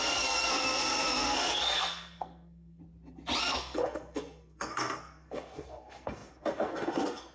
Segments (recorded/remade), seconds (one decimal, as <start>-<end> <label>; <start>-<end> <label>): 0.0-2.8 remade; 2.8-3.4 recorded; 3.4-7.3 remade